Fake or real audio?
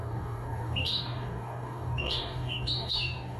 fake